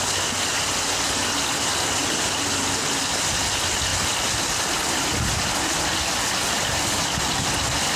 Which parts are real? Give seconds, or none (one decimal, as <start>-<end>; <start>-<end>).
0.0-8.0